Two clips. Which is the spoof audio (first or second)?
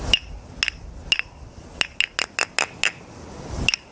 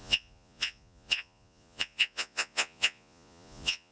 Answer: second